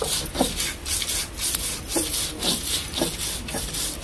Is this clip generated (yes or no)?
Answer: no